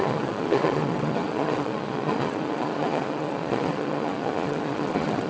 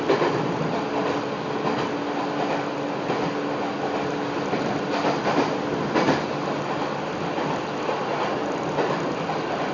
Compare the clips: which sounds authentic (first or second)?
second